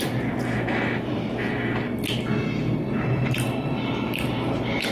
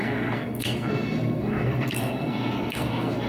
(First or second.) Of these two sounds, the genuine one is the first